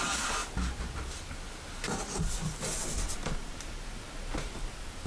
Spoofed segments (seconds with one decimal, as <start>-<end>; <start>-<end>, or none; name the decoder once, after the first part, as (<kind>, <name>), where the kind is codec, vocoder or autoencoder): none